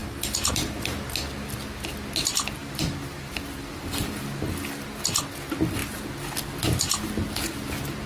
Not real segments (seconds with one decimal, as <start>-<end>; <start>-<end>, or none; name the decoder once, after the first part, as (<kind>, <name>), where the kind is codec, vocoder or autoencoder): 2.6-4.2 (vocoder, BigVGAN v2)